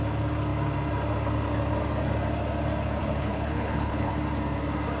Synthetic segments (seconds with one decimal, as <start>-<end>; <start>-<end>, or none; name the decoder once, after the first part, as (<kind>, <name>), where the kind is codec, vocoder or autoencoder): 3.0-4.1 (codec, HILCodec)